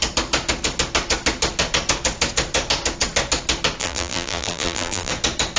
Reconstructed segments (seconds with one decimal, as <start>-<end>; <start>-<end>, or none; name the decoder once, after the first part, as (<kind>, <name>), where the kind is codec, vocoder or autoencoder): 3.8-5.1 (vocoder, BigVGAN v2)